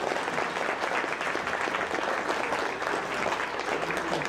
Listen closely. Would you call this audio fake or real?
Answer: real